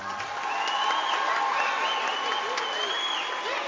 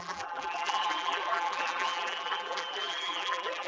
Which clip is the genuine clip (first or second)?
first